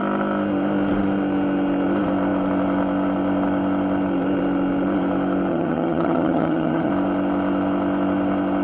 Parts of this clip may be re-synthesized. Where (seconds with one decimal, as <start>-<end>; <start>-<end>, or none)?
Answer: 5.5-6.9